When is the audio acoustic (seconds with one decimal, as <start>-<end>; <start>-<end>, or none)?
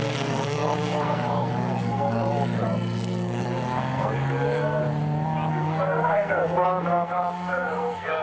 4.8-5.5